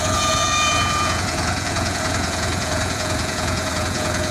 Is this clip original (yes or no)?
no